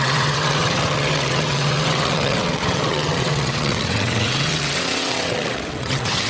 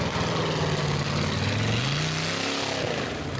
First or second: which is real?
second